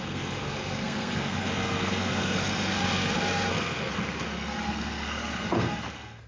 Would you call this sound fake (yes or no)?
yes